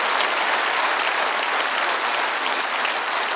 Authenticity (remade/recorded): recorded